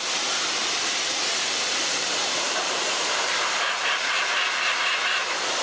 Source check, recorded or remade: remade